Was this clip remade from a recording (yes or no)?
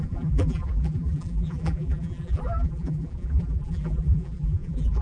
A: yes